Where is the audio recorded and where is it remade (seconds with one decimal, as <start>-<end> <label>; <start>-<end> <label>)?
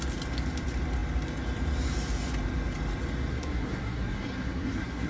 0.0-3.3 recorded; 3.3-5.1 remade